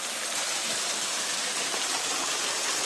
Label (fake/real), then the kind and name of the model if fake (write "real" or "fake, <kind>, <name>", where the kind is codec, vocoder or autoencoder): fake, vocoder, BigVGAN v2